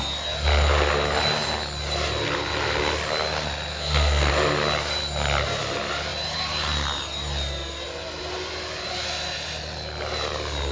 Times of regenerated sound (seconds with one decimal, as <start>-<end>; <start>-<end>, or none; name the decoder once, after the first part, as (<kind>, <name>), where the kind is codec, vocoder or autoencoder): 3.7-4.3 (codec, SNAC)